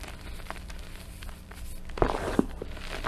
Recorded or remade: remade